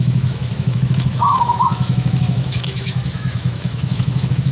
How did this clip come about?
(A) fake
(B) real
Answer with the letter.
A